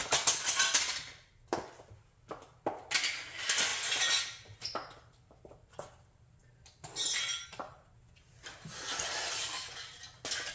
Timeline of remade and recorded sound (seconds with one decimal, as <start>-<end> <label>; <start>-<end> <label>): 0.0-10.5 recorded